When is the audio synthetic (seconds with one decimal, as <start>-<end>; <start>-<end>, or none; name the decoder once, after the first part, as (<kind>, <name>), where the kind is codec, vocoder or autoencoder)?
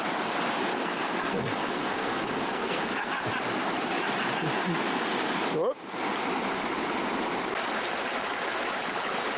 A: 0.7-3.1 (codec, SNAC)